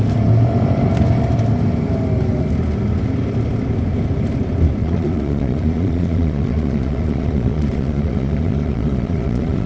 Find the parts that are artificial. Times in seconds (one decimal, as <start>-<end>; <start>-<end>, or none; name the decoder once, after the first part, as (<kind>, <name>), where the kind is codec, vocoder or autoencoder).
4.8-9.7 (vocoder, Vocos)